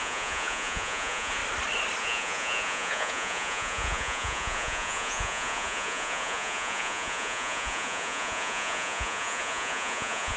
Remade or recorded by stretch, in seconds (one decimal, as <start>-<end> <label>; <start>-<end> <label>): 0.0-1.4 remade; 1.4-2.0 recorded; 2.0-10.4 remade